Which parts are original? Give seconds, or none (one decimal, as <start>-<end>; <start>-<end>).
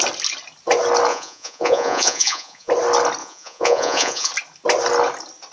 0.0-1.1; 2.7-3.2; 4.3-5.5